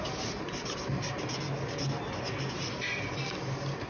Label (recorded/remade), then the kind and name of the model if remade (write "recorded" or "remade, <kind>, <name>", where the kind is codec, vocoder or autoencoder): recorded